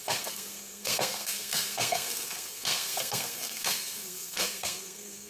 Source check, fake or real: fake